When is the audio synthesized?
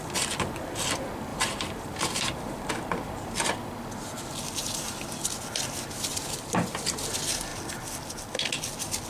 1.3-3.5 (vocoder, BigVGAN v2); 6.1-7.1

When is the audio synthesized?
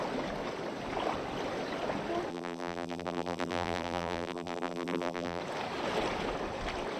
2.3-5.4 (vocoder, BigVGAN v2)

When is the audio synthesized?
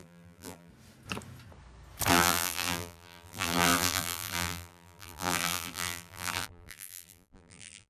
0.0-0.7 (vocoder, BigVGAN v2); 2.1-7.9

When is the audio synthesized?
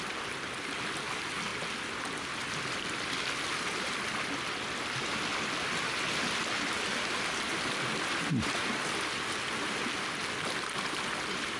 none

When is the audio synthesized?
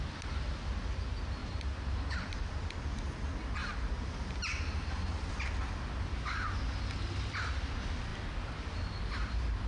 1.4-2.6 (vocoder, BigVGAN v2); 3.6-5.3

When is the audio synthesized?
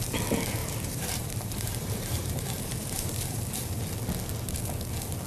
0.6-3.8 (vocoder, BigVGAN v2)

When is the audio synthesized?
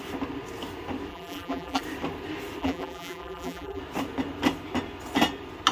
1.1-1.8 (vocoder, BigVGAN v2); 2.6-3.8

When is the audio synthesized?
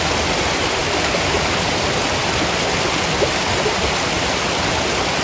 none